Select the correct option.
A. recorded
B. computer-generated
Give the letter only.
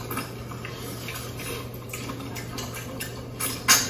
A